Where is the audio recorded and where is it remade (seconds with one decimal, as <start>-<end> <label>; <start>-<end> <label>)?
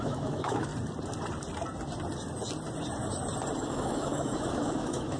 0.0-0.7 remade; 0.7-3.6 recorded; 3.6-5.2 remade